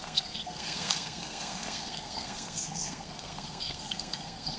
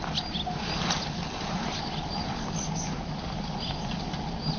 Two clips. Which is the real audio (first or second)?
second